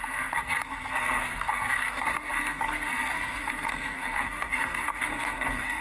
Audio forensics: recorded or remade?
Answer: remade